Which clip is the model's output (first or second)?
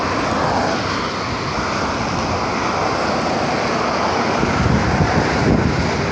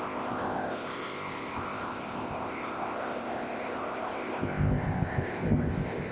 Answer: second